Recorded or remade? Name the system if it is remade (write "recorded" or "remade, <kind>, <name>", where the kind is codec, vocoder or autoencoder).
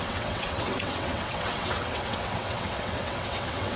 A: remade, vocoder, WaveNeXt